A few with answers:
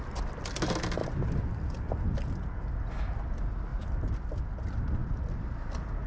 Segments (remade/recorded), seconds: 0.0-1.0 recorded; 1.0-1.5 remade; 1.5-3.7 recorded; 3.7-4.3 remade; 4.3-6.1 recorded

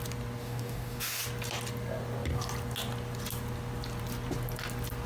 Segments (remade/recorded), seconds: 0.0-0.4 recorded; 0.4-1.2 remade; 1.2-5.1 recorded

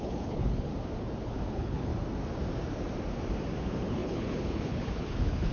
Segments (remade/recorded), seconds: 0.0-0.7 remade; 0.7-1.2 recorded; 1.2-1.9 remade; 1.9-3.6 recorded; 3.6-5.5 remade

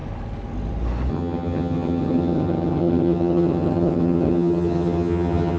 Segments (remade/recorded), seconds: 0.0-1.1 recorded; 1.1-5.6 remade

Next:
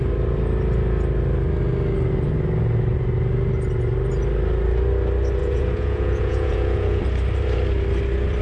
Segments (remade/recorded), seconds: 0.0-5.4 recorded; 5.4-7.0 remade; 7.0-8.4 recorded

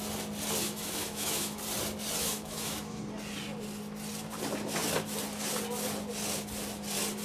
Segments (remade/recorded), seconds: 0.0-0.6 recorded; 0.6-1.6 remade; 1.6-2.2 recorded; 2.2-3.0 remade; 3.0-7.2 recorded

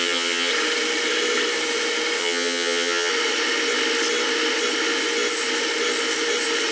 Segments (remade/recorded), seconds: 0.0-0.5 remade; 0.5-2.2 recorded; 2.2-3.1 remade; 3.1-6.7 recorded

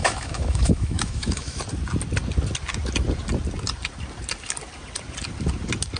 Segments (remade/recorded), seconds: 0.0-1.6 remade; 1.6-6.0 recorded